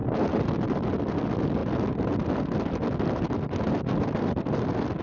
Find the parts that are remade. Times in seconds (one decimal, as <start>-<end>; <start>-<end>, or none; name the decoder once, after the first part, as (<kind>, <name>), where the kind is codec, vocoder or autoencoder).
none